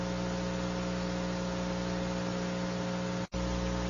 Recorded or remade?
recorded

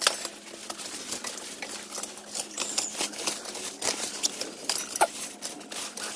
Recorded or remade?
recorded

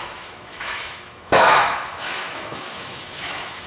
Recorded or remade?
remade